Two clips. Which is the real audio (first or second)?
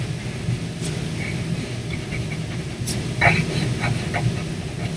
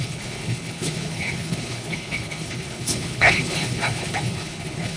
first